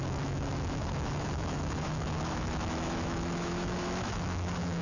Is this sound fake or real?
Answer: fake